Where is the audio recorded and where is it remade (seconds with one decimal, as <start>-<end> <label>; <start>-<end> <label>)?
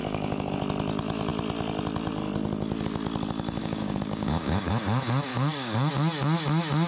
0.0-0.6 remade; 0.6-3.6 recorded; 3.6-4.7 remade; 4.7-5.3 recorded; 5.3-5.9 remade; 5.9-6.9 recorded